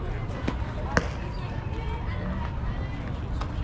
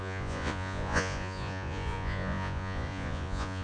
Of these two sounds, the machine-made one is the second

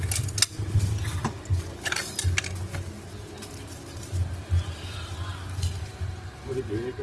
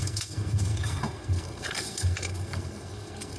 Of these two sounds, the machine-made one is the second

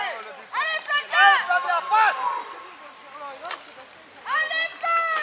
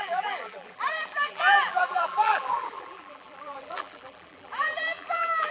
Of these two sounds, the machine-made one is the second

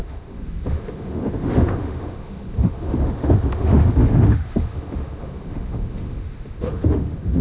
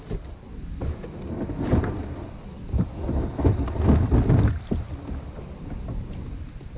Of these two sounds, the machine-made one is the first